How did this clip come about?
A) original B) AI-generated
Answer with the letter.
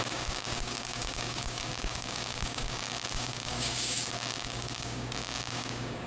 B